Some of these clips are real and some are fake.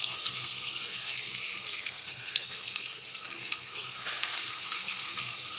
fake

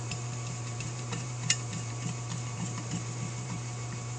fake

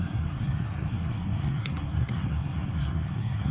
fake